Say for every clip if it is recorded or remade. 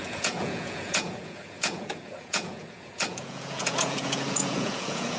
remade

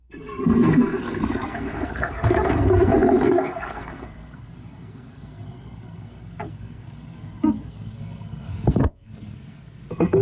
remade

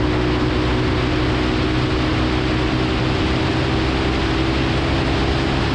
recorded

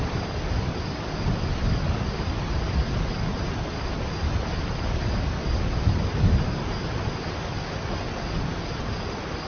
recorded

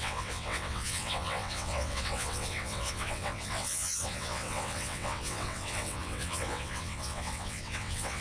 remade